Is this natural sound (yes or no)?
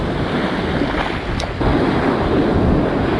yes